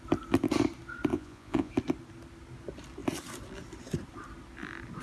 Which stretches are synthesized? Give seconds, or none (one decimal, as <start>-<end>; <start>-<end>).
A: 1.1-1.7